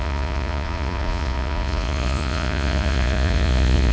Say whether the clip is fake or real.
fake